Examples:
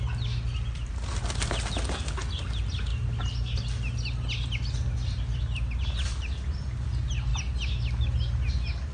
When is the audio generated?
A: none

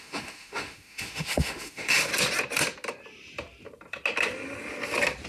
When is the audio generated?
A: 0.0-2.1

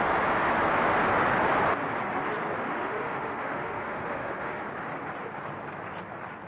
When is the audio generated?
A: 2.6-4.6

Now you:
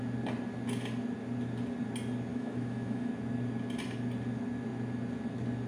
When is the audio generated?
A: 2.3-3.1

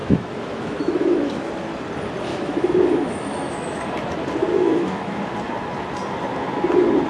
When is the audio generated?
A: 0.0-1.5; 2.3-3.8; 4.5-5.2